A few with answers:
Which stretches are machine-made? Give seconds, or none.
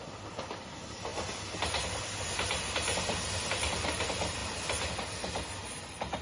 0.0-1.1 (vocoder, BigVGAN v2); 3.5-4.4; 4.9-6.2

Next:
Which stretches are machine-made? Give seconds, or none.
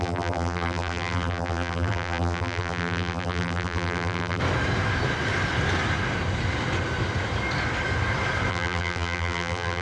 0.0-4.4 (vocoder, BigVGAN v2); 8.5-9.8